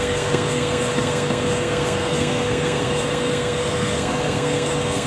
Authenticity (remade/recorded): remade